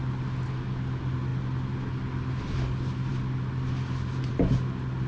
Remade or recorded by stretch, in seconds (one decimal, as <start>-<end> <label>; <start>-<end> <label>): 0.0-5.1 recorded